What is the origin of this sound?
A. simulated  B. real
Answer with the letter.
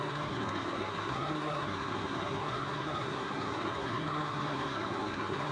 A